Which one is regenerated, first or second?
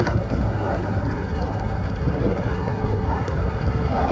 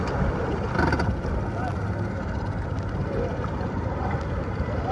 first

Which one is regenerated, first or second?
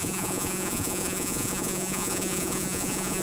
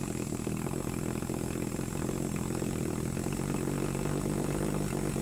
first